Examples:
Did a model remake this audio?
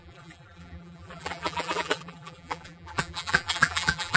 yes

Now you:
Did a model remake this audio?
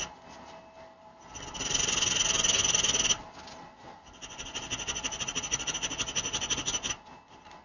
no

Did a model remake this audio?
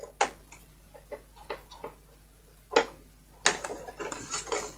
no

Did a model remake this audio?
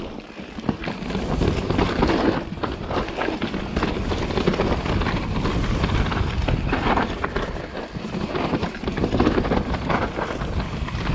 no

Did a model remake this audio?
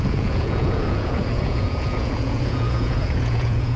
yes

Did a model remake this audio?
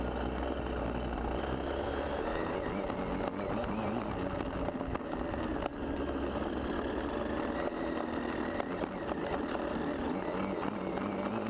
no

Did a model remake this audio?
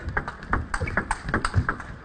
no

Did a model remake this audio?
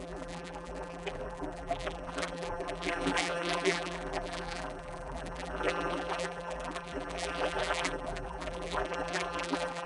yes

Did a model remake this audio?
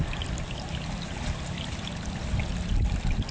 no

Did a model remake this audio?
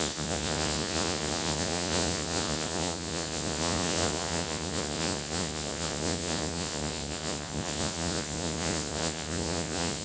yes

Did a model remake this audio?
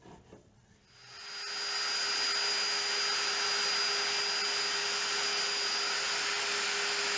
no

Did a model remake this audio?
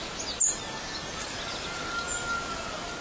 no